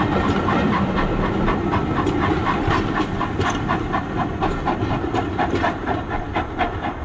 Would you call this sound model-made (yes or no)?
no